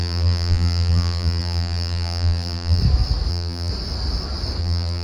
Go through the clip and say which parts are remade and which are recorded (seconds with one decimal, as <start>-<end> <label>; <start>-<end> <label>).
0.0-2.8 remade; 2.8-3.3 recorded; 3.3-3.7 remade; 3.7-4.6 recorded; 4.6-5.0 remade